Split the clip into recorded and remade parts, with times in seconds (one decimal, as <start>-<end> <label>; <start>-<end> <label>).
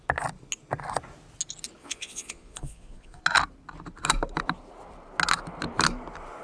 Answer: 0.0-1.8 recorded; 1.8-3.2 remade; 3.2-6.4 recorded